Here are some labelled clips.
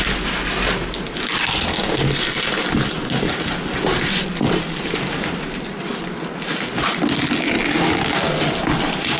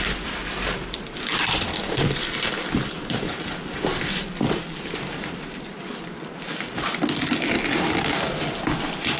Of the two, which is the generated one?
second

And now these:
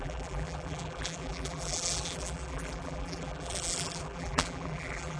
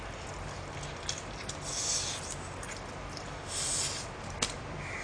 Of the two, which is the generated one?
first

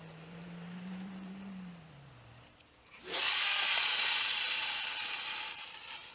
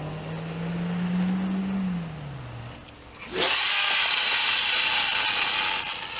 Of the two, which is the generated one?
first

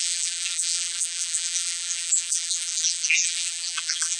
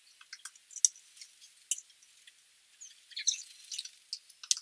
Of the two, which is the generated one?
first